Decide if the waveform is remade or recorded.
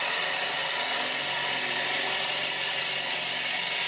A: recorded